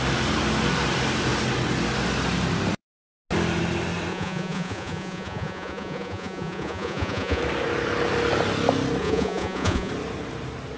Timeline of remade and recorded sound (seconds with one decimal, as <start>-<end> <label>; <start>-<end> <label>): 0.0-4.1 recorded; 4.1-7.4 remade; 7.4-9.0 recorded; 9.0-9.9 remade; 9.9-10.8 recorded